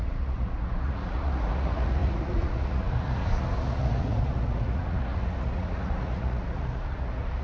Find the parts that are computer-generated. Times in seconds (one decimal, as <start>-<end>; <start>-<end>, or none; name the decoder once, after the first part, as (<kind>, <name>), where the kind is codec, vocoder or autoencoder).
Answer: 0.0-7.4 (vocoder, Vocos)